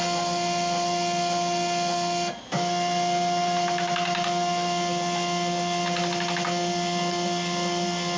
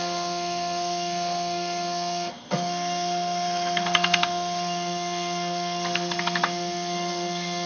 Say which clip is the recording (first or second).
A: first